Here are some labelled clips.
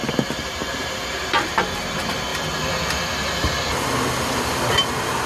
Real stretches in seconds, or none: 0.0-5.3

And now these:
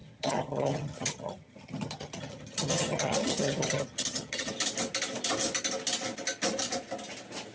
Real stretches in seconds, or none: 4.5-7.5

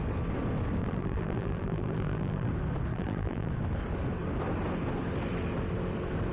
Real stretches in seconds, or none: 0.0-0.8; 2.5-2.9; 3.5-6.3

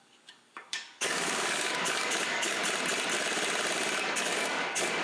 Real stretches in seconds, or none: 2.6-4.0

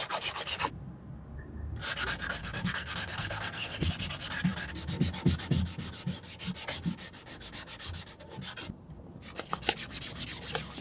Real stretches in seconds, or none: 0.0-2.4; 3.9-10.8

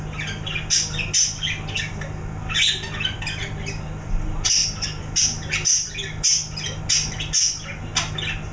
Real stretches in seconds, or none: 0.0-8.5